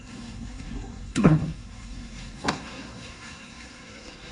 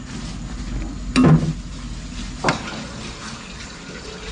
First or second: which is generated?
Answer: first